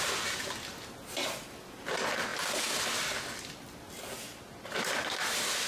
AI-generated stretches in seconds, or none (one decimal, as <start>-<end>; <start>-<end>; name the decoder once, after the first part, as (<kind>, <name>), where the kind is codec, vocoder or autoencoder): none